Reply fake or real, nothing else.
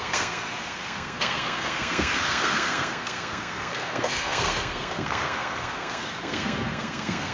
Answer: fake